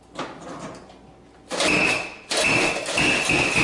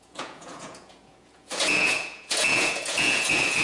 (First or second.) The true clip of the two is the first